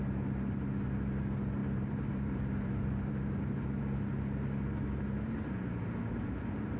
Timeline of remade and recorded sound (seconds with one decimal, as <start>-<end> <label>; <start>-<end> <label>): 0.0-1.6 recorded; 1.6-3.8 remade; 3.8-6.8 recorded